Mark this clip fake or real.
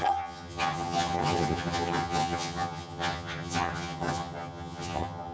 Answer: fake